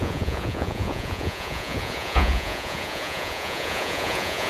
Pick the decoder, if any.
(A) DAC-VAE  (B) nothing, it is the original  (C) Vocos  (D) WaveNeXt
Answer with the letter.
C